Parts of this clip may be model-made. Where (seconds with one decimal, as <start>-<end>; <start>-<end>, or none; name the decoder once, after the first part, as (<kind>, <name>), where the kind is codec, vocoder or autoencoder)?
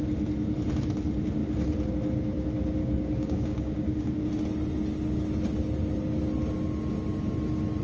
2.8-4.2 (codec, DAC)